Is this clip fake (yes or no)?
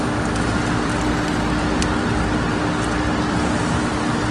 no